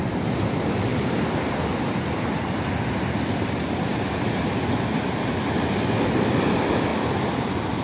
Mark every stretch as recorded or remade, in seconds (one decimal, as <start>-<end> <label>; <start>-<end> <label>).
0.0-6.9 recorded; 6.9-7.8 remade